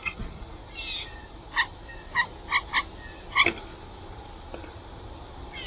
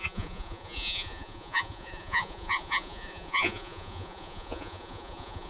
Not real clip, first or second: second